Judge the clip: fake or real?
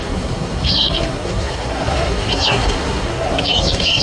fake